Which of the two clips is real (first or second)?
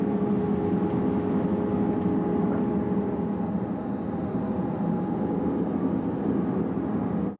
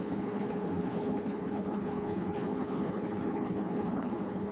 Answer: first